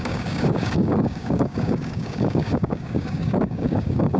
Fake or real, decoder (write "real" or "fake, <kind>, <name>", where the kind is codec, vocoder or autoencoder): fake, codec, DAC